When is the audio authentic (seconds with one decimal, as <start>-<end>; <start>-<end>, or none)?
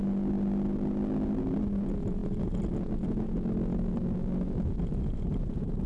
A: 0.0-5.9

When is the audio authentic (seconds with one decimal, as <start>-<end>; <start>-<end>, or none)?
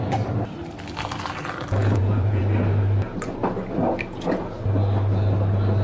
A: 0.0-1.8; 2.4-5.8